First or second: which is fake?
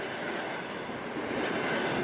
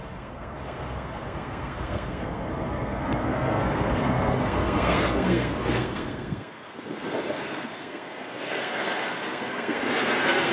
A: second